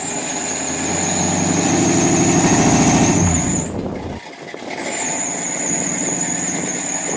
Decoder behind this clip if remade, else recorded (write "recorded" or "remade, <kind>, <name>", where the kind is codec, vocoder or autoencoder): recorded